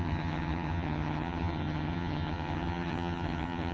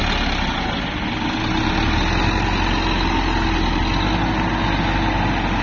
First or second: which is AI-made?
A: first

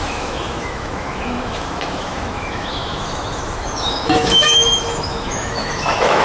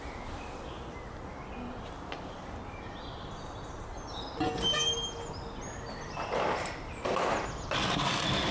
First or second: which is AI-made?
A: first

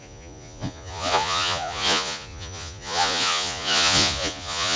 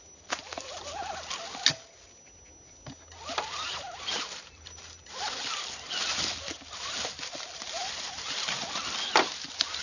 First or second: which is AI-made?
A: first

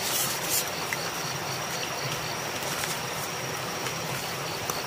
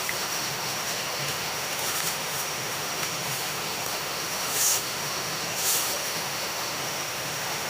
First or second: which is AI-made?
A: second